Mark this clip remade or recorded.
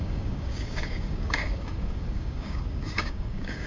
remade